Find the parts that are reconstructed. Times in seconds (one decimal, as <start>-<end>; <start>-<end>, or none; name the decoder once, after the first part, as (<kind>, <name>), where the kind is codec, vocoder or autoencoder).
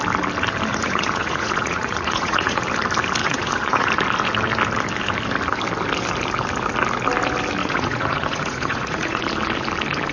0.7-2.6 (vocoder, Vocos); 3.2-3.9; 7.6-9.2